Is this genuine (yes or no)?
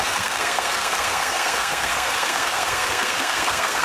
no